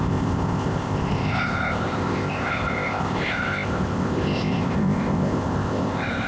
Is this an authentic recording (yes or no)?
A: no